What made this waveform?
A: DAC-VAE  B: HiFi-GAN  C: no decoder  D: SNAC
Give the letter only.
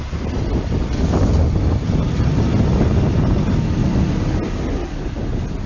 C